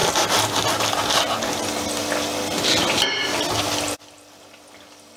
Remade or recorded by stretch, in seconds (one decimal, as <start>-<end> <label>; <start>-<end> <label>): 0.0-5.2 recorded